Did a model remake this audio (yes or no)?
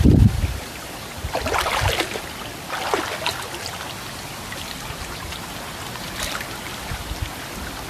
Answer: no